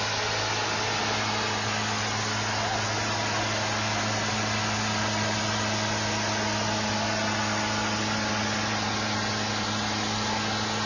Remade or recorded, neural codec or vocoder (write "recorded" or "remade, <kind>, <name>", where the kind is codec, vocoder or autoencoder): recorded